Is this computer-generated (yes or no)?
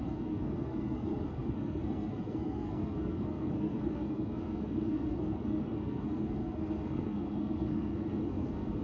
yes